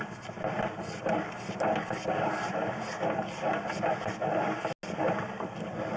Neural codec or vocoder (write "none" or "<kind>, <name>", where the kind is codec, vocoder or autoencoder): none